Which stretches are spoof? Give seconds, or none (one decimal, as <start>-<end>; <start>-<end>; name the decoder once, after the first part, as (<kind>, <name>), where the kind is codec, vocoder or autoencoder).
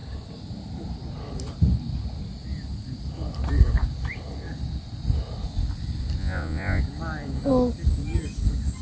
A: 6.2-6.8 (vocoder, Vocos)